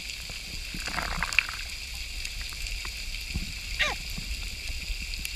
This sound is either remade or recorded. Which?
recorded